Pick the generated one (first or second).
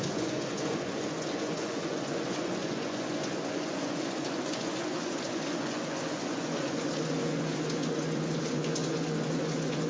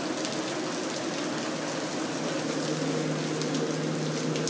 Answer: first